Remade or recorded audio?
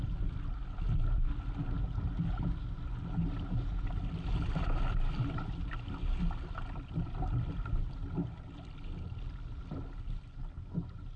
recorded